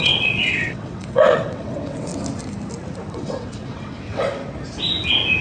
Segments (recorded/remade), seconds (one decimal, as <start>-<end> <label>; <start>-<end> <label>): 0.0-2.1 remade; 2.1-3.1 recorded; 3.1-4.4 remade; 4.4-5.4 recorded